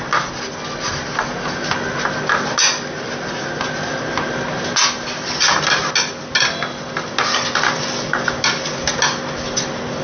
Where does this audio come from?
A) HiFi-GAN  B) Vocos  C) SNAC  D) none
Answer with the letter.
D